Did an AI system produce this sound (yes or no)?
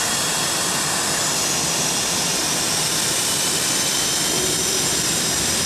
no